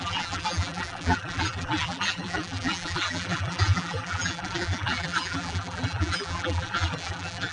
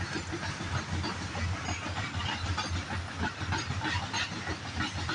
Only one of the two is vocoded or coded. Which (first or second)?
first